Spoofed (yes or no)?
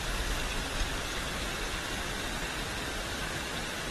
no